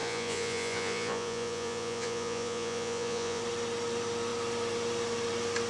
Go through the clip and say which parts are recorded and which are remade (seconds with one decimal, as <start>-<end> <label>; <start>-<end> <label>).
0.0-3.4 remade; 3.4-5.7 recorded